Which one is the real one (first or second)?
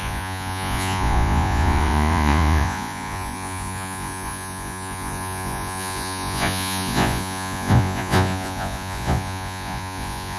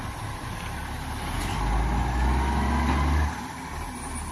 second